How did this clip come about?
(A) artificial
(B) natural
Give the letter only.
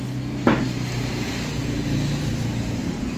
B